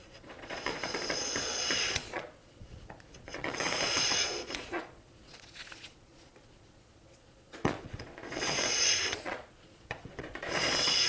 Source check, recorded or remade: remade